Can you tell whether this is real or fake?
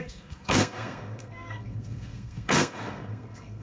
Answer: fake